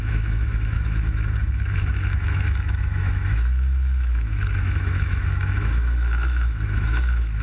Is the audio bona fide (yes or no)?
no